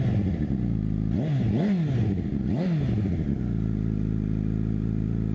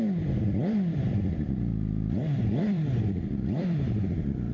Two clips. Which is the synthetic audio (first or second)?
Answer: second